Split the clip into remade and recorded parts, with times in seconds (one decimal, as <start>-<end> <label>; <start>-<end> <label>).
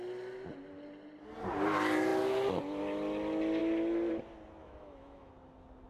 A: 0.0-4.6 recorded; 4.6-5.3 remade; 5.3-5.9 recorded